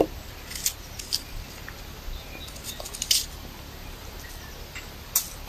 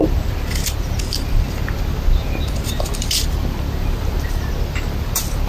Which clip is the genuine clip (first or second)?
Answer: first